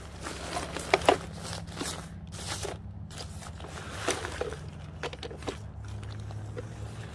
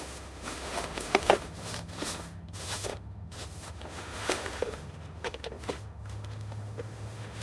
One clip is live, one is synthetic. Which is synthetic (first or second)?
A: second